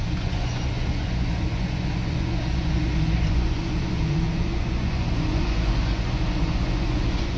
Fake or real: fake